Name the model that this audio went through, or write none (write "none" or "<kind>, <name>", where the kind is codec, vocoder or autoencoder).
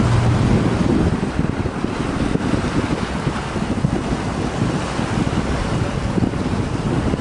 none